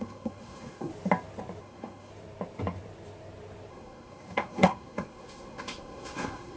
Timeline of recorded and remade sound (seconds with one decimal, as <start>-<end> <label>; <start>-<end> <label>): 0.0-0.9 remade; 0.9-1.6 recorded; 1.6-2.1 remade; 2.1-3.7 recorded; 3.7-6.6 remade